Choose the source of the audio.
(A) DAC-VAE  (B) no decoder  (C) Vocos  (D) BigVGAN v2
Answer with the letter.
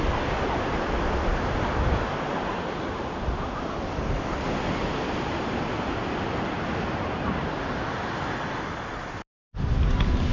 B